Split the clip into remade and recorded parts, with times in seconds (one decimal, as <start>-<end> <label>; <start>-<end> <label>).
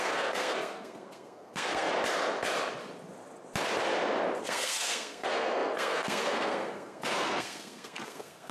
0.0-1.9 remade; 1.9-4.4 recorded; 4.4-8.5 remade